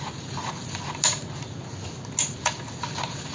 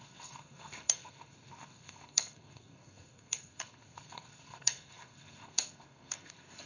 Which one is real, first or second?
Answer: first